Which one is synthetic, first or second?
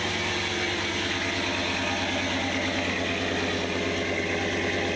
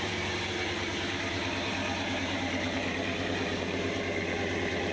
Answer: second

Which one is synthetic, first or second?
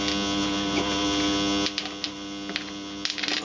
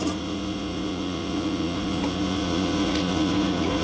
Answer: second